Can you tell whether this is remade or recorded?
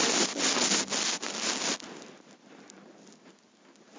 recorded